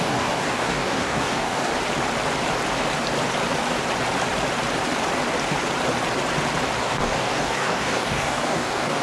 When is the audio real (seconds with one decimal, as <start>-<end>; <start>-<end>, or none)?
1.7-6.8